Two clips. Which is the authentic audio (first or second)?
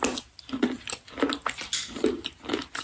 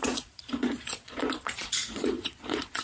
first